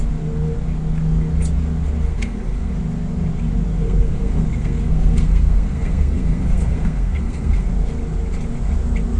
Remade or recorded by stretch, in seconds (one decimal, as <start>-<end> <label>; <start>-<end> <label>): 0.0-2.1 recorded; 2.1-2.7 remade; 2.7-3.7 recorded; 3.7-7.7 remade; 7.7-9.2 recorded